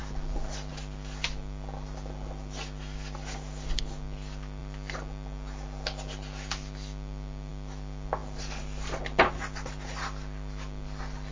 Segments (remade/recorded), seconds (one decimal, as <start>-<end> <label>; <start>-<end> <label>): 0.0-11.3 recorded